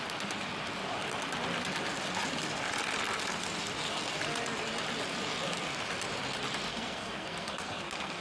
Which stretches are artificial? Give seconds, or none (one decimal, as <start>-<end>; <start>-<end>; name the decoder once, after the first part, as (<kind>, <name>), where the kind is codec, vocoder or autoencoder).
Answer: 6.7-8.2 (codec, SNAC)

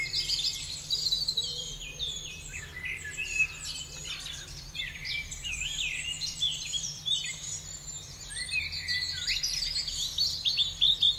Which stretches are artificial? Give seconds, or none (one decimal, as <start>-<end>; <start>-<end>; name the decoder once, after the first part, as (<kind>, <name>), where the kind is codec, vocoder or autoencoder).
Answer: 0.0-3.1 (vocoder, BigVGAN v2); 4.0-8.6